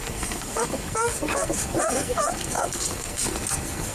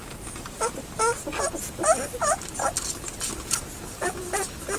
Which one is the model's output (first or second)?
first